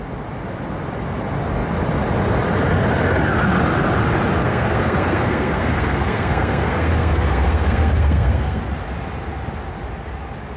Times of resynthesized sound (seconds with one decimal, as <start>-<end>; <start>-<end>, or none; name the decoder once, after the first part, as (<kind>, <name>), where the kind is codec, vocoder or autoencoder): 4.4-8.6 (codec, SNAC)